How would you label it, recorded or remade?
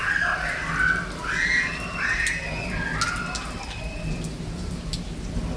recorded